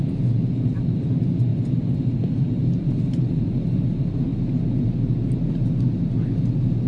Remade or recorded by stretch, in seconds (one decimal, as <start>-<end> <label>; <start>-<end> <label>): 0.0-6.9 recorded